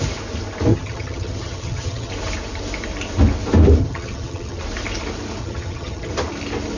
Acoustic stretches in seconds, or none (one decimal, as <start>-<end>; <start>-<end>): 0.0-0.7; 2.1-3.8; 4.6-5.4; 6.1-6.8